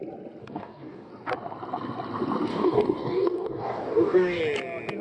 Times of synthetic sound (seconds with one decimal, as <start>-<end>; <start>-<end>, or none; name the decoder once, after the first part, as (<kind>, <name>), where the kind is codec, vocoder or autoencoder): 0.4-1.1 (codec, DAC); 2.5-4.4